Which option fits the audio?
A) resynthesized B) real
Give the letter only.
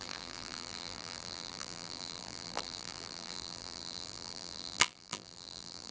A